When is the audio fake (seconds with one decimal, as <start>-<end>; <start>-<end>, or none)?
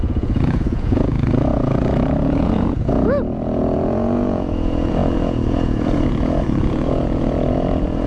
0.0-8.1